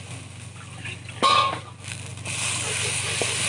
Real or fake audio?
real